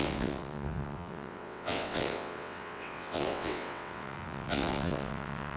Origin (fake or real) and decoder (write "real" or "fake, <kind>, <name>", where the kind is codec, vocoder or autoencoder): fake, vocoder, WaveNeXt